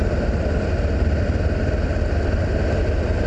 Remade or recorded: recorded